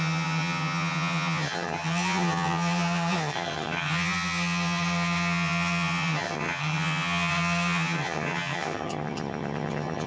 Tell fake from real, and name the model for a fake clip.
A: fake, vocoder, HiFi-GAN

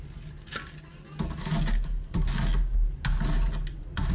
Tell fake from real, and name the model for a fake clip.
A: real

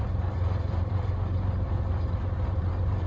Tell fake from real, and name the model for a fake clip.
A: fake, vocoder, BigVGAN v2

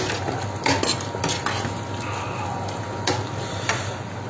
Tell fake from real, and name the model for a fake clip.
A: real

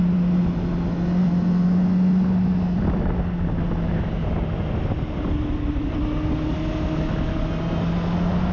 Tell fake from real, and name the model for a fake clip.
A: real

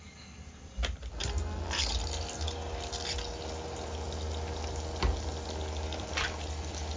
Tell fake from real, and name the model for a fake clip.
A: real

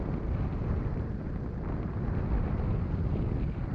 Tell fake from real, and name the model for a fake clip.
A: real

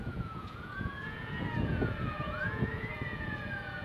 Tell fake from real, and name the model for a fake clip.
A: fake, vocoder, Vocos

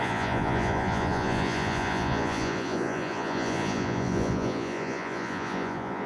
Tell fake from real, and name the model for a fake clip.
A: fake, vocoder, Vocos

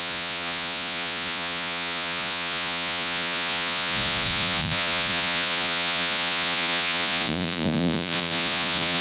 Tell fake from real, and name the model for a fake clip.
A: fake, vocoder, Vocos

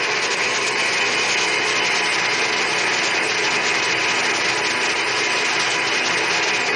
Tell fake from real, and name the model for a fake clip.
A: real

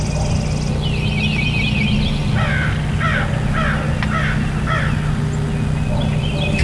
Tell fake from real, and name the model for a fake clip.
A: real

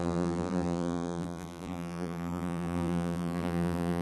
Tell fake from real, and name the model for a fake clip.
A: fake, vocoder, BigVGAN v2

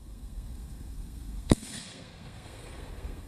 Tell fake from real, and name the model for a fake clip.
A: fake, codec, SNAC